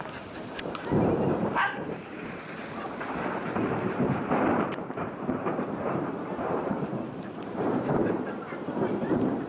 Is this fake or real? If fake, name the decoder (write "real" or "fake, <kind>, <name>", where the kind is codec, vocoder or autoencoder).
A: fake, vocoder, BigVGAN v2